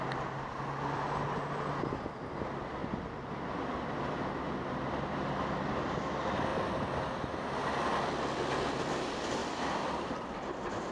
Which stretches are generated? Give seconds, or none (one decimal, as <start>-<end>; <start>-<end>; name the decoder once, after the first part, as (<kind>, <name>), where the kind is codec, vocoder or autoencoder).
2.8-6.1 (vocoder, BigVGAN v2); 6.5-7.1; 7.6-8.7; 9.4-10.2